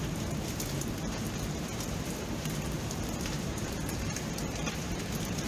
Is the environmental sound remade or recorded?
remade